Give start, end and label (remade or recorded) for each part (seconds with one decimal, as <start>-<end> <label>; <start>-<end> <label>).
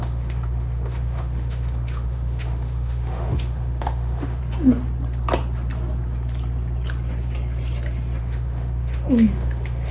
0.0-4.4 remade; 4.4-8.2 recorded; 8.2-9.9 remade